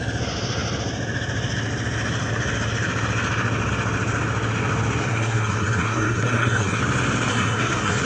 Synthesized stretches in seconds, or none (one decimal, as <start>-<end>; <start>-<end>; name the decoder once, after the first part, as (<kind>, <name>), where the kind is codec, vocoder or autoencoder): 5.0-6.8 (codec, SNAC); 7.3-8.0